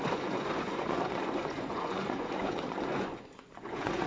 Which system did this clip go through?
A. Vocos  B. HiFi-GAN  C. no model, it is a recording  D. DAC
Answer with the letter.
A